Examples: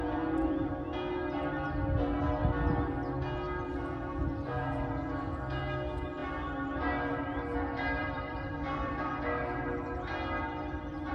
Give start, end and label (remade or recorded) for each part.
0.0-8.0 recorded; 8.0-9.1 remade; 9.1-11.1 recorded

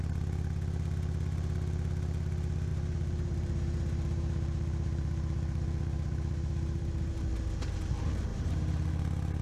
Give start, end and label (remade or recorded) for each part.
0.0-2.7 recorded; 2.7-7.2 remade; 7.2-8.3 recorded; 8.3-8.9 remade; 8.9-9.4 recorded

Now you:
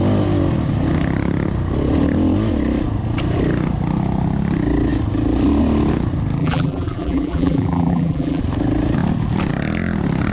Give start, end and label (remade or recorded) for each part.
0.0-6.4 recorded; 6.4-8.4 remade; 8.4-10.3 recorded